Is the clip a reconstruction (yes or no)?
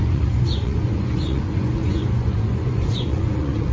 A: yes